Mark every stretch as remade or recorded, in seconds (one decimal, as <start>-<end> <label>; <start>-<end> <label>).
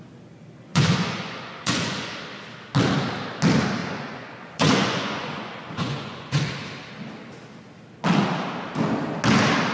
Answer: 0.0-0.7 recorded; 0.7-2.2 remade; 2.2-3.8 recorded; 3.8-6.4 remade; 6.4-9.7 recorded